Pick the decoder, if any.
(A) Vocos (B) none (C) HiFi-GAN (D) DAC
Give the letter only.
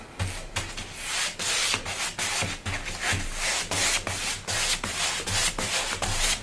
B